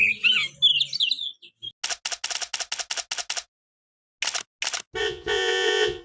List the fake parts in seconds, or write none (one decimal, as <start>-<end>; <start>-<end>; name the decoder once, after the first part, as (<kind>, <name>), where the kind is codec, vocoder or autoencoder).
5.0-6.0 (vocoder, Vocos)